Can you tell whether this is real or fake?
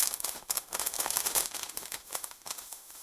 fake